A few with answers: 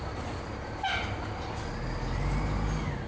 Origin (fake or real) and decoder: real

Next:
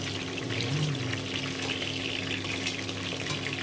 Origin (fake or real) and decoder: real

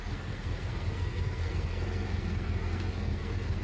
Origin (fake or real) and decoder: fake, codec, SNAC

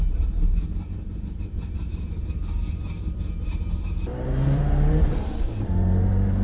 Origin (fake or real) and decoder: fake, vocoder, BigVGAN v2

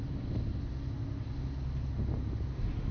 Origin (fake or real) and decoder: real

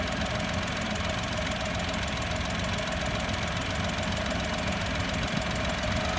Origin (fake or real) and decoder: real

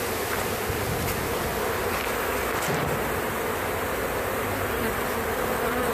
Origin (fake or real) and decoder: real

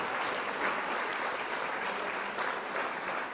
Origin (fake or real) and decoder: real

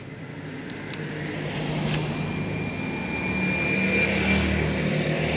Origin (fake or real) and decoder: real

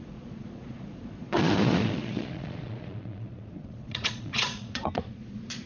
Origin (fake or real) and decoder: fake, vocoder, Vocos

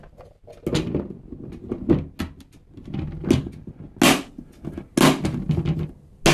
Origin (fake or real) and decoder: real